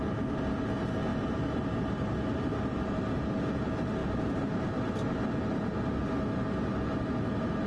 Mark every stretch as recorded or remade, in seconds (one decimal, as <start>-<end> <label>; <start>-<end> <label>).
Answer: 0.0-1.1 recorded; 1.1-3.2 remade; 3.2-4.0 recorded; 4.0-4.7 remade; 4.7-7.7 recorded